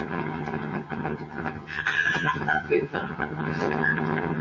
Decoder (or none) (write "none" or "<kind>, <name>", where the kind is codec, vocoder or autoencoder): vocoder, HiFi-GAN